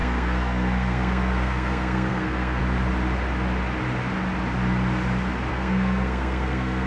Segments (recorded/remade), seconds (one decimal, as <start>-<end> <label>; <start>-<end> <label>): 0.0-2.6 remade; 2.6-5.5 recorded; 5.5-6.9 remade